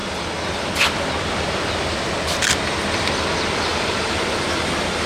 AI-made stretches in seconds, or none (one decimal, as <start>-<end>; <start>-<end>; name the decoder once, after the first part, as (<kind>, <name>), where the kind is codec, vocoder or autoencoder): 3.7-5.1 (vocoder, BigVGAN v2)